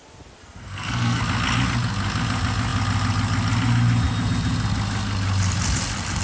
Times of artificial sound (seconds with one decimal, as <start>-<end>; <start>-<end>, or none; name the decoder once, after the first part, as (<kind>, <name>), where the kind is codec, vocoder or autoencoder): 0.4-1.2 (codec, SNAC)